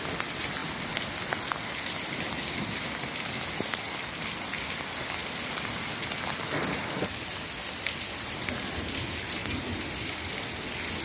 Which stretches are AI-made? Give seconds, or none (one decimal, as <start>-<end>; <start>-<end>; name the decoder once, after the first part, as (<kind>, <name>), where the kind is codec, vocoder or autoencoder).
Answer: none